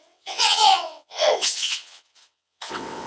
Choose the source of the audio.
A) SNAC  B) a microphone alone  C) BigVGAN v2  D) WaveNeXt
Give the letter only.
D